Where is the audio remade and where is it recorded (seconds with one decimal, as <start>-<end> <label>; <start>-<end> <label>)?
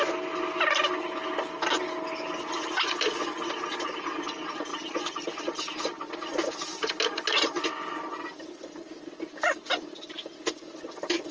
0.0-4.7 recorded; 4.7-6.3 remade; 6.3-9.7 recorded; 9.7-10.2 remade; 10.2-11.3 recorded